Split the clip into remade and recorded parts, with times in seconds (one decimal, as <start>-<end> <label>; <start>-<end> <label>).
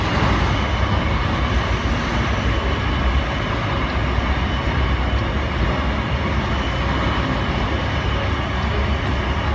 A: 0.0-9.5 recorded